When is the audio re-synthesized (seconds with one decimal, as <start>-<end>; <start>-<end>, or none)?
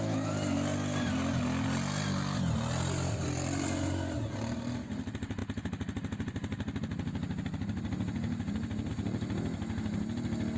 none